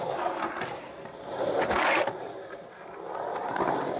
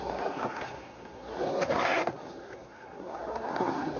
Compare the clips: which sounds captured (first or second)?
first